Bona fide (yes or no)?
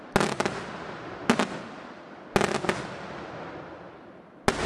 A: yes